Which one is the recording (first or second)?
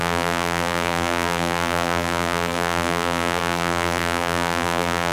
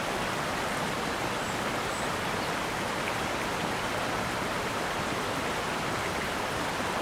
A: second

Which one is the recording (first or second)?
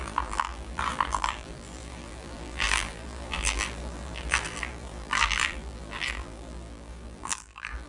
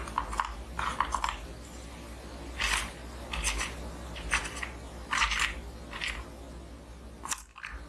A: second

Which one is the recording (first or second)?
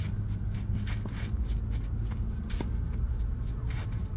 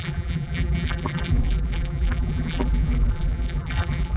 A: first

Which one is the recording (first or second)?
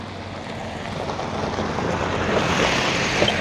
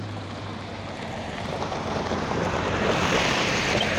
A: first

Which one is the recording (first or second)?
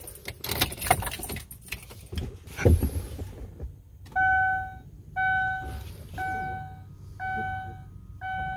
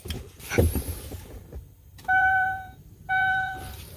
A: first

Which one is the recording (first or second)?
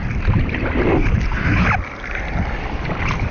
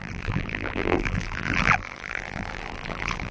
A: first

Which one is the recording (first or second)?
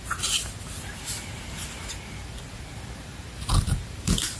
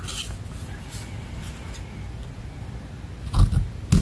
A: second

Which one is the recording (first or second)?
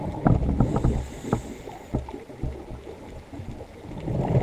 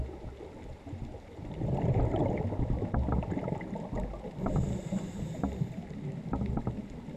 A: first